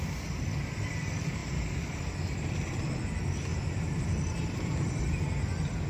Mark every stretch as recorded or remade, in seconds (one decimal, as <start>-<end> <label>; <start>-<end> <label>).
0.0-3.5 recorded; 3.5-5.3 remade; 5.3-5.9 recorded